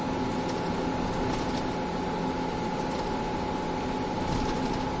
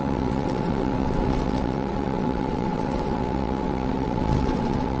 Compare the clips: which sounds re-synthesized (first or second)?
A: second